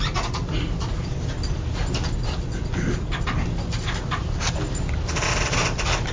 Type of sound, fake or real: real